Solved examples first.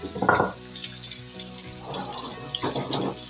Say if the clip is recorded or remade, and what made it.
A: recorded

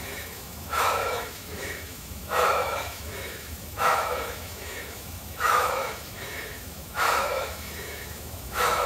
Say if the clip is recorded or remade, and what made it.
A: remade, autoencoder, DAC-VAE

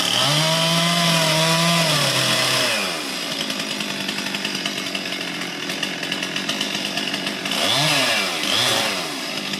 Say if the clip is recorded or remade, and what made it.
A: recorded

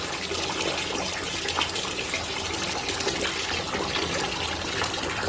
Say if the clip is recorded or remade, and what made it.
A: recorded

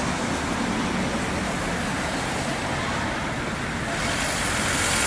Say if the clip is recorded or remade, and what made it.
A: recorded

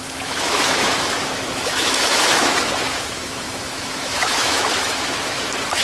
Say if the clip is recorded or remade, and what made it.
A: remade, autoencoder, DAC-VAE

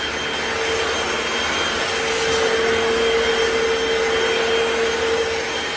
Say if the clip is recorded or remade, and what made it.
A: recorded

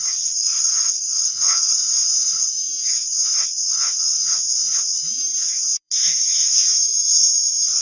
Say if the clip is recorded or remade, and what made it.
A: remade, autoencoder, DAC-VAE